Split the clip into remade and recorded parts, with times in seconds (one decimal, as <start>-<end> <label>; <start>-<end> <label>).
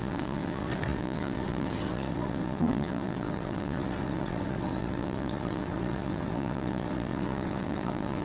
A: 0.0-8.2 remade